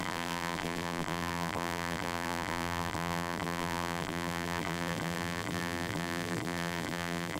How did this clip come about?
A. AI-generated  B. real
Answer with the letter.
A